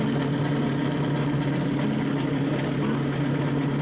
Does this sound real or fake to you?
real